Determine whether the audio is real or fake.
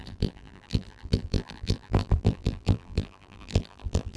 fake